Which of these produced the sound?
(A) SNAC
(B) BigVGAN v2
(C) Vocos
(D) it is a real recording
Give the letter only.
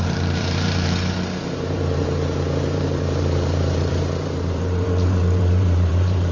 B